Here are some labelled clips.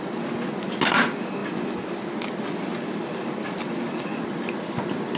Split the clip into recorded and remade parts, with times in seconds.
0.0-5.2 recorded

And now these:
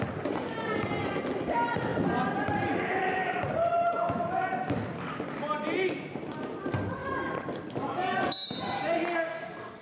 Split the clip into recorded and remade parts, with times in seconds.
0.0-1.9 recorded; 1.9-4.3 remade; 4.3-7.0 recorded; 7.0-7.6 remade; 7.6-9.8 recorded

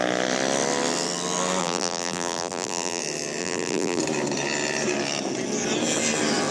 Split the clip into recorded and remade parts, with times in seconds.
0.0-1.6 recorded; 1.6-3.0 remade; 3.0-3.4 recorded; 3.4-4.0 remade; 4.0-6.5 recorded

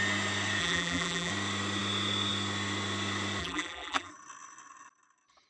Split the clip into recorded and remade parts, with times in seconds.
0.0-0.6 recorded; 0.6-1.3 remade; 1.3-3.4 recorded; 3.4-4.1 remade; 4.1-5.5 recorded

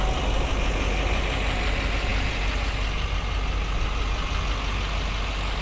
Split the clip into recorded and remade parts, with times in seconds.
0.0-5.6 recorded

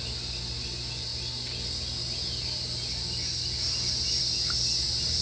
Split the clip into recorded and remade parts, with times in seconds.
0.0-5.2 recorded

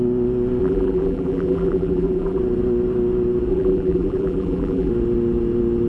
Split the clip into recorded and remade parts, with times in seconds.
0.0-0.6 recorded; 0.6-2.4 remade; 2.4-3.5 recorded; 3.5-4.9 remade; 4.9-5.9 recorded

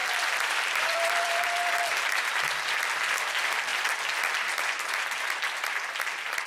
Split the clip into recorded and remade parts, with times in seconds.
0.0-1.7 remade; 1.7-6.5 recorded